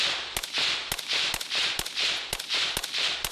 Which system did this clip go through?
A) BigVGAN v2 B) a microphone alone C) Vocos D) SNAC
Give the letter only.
B